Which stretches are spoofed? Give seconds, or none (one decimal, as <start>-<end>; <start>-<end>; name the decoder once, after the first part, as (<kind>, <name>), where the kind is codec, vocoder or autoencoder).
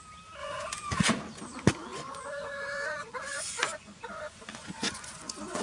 0.4-1.1 (vocoder, Vocos); 1.9-5.6